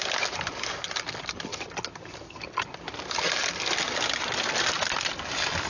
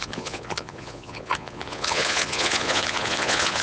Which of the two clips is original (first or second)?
first